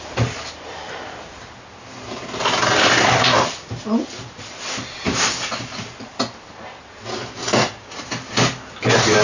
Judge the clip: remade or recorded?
recorded